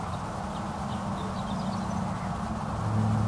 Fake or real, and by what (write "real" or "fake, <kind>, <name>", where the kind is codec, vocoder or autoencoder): real